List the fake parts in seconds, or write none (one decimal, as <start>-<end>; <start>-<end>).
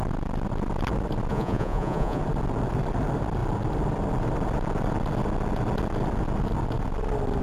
1.3-2.2